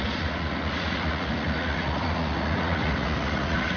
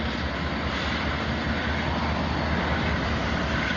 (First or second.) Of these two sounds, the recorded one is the second